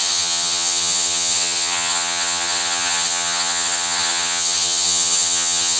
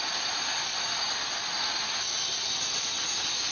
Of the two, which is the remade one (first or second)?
first